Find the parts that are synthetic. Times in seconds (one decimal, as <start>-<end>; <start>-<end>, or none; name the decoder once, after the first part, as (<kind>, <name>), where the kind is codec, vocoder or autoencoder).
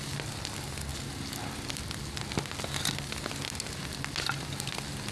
none